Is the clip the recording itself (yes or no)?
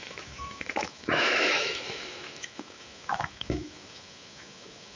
no